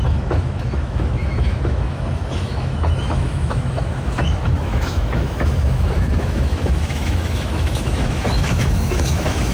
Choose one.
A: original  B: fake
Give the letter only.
B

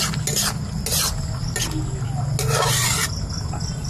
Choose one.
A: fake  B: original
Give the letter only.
B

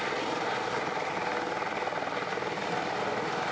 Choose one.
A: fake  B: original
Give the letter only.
B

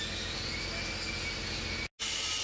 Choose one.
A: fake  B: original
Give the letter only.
B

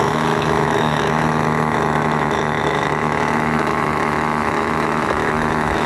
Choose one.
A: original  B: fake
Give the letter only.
B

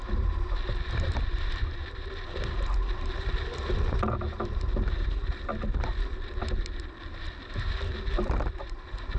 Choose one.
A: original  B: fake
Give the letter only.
A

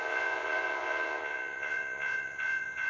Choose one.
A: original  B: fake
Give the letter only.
B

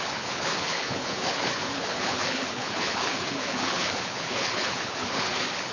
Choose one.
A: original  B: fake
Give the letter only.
B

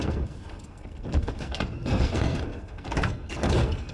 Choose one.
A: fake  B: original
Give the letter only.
A